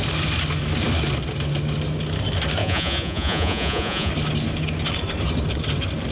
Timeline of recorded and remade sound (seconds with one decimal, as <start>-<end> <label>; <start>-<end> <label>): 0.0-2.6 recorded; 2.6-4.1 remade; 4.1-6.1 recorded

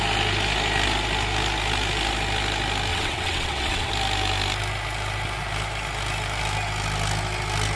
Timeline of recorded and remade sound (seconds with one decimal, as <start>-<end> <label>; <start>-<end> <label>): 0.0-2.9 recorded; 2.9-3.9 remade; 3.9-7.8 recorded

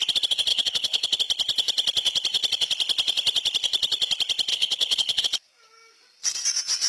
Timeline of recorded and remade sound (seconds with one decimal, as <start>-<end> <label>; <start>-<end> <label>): 0.0-0.5 recorded; 0.5-1.2 remade; 1.2-4.5 recorded; 4.5-5.2 remade; 5.2-6.9 recorded

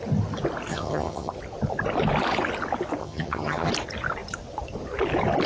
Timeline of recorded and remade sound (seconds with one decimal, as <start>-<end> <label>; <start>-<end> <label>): 0.0-0.7 recorded; 0.7-1.3 remade; 1.3-3.0 recorded; 3.0-3.7 remade; 3.7-5.5 recorded